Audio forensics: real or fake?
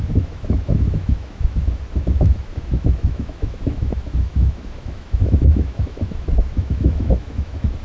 fake